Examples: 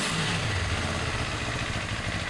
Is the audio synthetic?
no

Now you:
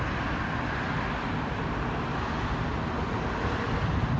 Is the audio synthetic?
no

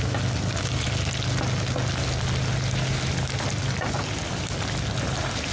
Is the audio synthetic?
no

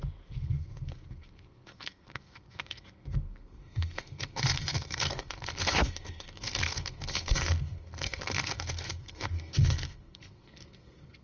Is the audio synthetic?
yes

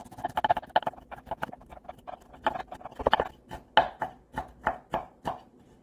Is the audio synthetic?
no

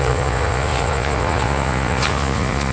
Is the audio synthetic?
yes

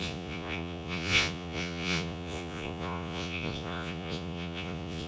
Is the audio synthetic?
yes